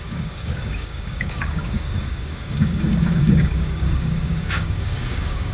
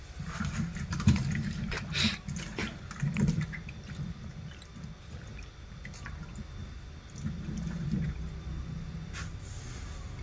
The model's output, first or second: first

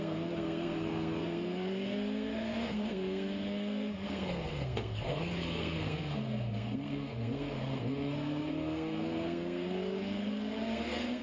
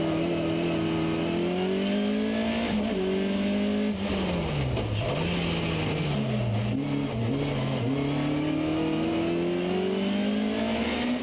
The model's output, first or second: first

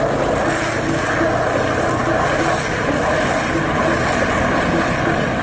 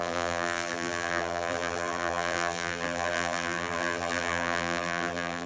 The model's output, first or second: second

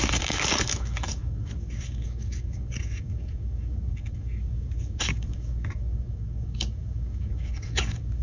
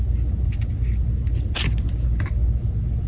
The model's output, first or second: first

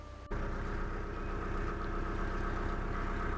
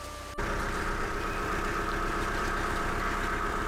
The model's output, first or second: second